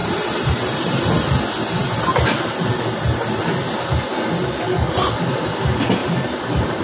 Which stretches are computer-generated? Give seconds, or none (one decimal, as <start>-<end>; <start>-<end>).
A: 0.0-0.9; 6.0-6.8